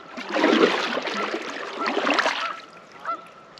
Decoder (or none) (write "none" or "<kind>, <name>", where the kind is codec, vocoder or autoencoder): none